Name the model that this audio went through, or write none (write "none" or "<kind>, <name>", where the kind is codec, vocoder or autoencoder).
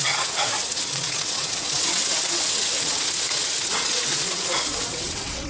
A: vocoder, WaveNeXt